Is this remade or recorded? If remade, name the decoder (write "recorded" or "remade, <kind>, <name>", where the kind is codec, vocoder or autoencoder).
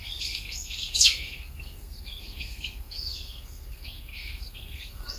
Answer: remade, codec, SNAC